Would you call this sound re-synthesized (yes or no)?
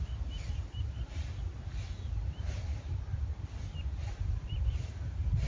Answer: no